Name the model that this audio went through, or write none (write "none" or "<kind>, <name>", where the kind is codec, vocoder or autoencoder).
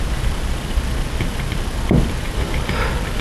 none